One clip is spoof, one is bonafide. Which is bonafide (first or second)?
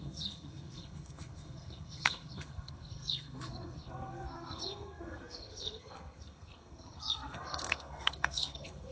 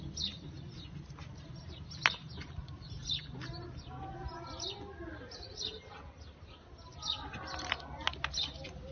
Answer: second